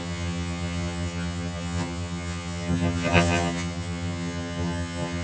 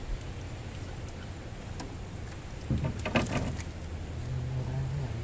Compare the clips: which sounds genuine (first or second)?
second